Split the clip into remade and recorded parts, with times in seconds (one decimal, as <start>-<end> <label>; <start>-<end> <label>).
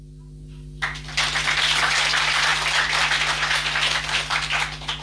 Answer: 0.0-5.0 recorded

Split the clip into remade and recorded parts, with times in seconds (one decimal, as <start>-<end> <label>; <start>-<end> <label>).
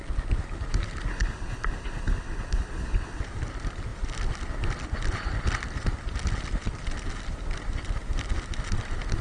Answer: 0.0-1.1 recorded; 1.1-3.2 remade; 3.2-9.2 recorded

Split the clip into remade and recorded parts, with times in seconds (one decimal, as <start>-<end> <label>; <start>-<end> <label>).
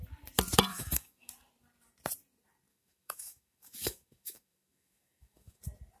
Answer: 0.0-0.7 recorded; 0.7-1.3 remade; 1.3-2.7 recorded; 2.7-5.6 remade; 5.6-6.0 recorded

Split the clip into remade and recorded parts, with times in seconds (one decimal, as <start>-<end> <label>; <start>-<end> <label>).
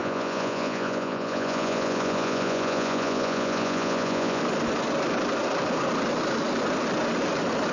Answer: 0.0-4.4 remade; 4.4-7.7 recorded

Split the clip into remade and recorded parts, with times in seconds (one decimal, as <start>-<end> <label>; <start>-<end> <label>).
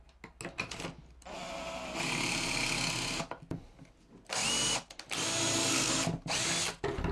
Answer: 0.0-7.1 recorded